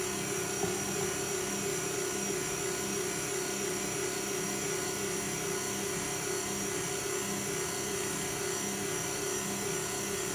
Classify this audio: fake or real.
real